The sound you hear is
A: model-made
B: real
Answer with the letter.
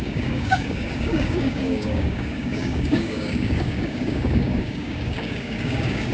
A